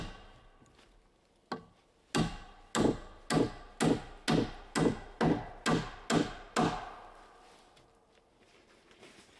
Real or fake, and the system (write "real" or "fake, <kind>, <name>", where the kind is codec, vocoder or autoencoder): real